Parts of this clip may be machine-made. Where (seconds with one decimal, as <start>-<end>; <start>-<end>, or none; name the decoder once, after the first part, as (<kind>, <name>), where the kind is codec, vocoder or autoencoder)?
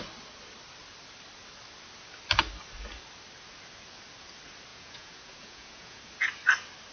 4.7-6.0 (vocoder, Vocos)